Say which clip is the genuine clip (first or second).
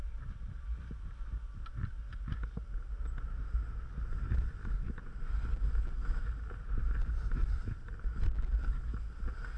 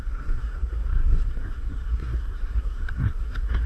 first